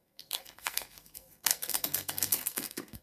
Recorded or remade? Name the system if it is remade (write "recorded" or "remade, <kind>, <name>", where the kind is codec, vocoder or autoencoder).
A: remade, codec, SNAC